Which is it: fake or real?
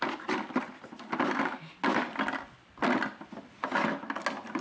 real